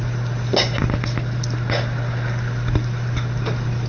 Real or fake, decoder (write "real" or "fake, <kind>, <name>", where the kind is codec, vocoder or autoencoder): real